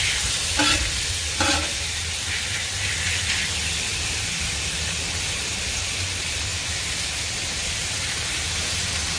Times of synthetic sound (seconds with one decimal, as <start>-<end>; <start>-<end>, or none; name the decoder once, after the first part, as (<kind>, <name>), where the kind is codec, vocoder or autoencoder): 6.5-9.2 (vocoder, BigVGAN v2)